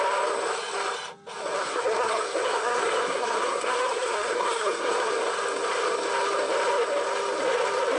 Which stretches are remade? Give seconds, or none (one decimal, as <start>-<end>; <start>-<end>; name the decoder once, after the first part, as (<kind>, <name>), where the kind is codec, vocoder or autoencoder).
1.6-5.1 (codec, SNAC)

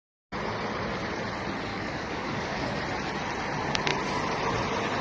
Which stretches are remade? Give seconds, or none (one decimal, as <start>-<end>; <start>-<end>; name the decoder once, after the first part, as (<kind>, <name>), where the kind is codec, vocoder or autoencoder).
1.7-2.8 (codec, DAC)